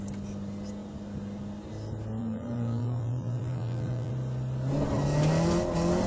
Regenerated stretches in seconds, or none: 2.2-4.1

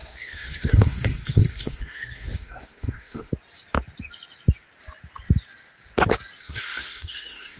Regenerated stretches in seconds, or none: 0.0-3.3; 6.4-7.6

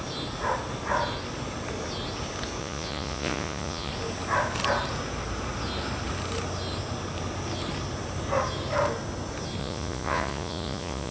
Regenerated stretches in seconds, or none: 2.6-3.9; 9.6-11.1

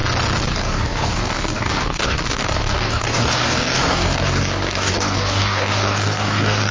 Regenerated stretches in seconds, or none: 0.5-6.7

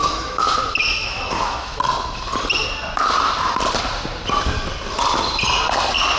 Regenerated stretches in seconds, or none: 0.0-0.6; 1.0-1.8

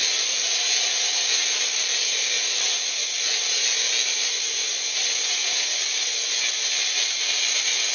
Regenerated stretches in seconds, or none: none

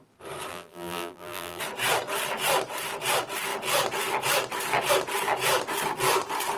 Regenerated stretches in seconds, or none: 0.5-1.6